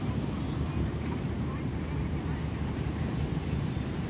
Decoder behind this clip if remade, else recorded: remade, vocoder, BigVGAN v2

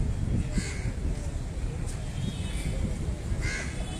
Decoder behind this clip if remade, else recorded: recorded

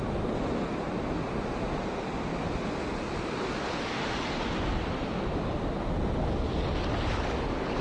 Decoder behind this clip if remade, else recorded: recorded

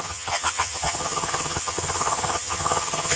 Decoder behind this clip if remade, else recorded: remade, vocoder, HiFi-GAN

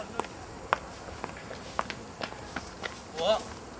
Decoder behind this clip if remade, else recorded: recorded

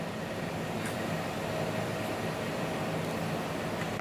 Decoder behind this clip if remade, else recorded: recorded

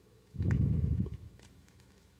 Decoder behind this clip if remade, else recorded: remade, autoencoder, DAC-VAE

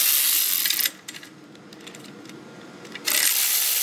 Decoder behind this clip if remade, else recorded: recorded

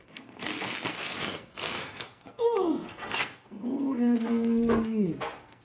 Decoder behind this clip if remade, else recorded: remade, codec, SNAC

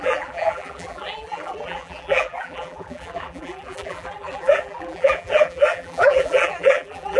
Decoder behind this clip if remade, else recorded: remade, vocoder, BigVGAN v2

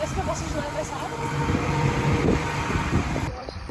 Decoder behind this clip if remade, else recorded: remade, vocoder, BigVGAN v2